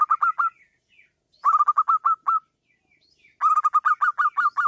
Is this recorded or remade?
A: recorded